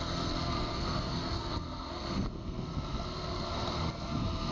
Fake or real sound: fake